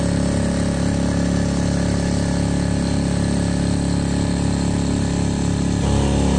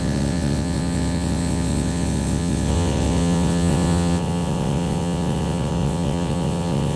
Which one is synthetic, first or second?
second